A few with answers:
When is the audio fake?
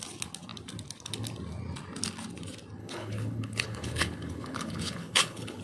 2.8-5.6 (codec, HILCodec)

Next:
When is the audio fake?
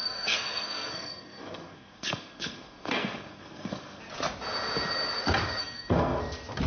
0.0-4.0 (codec, SNAC); 5.6-6.2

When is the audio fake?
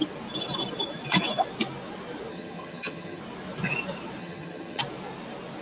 2.3-3.2 (vocoder, HiFi-GAN); 4.2-4.8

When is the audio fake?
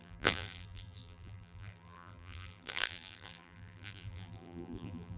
0.0-5.2 (vocoder, BigVGAN v2)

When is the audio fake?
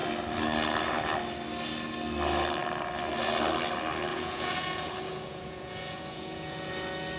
4.1-6.7 (vocoder, Vocos)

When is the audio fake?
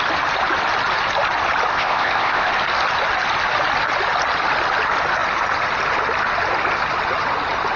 1.7-2.5 (codec, ZipCodec)